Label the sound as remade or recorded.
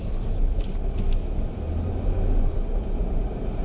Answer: recorded